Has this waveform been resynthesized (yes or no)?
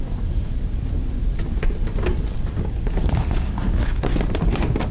no